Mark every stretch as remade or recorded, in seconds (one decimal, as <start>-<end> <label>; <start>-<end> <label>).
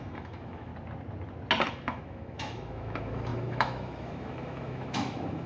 0.0-0.7 remade; 0.7-1.7 recorded; 1.7-5.5 remade